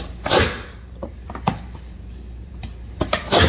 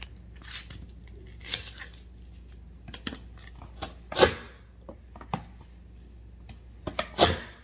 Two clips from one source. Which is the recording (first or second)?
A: second